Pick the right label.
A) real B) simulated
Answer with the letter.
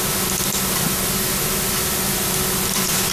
A